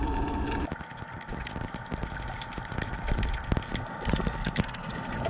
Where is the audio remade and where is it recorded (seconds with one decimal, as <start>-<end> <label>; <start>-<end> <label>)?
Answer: 0.0-5.3 recorded